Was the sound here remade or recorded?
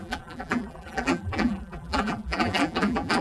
remade